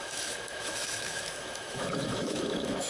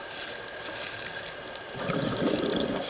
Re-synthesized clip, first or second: first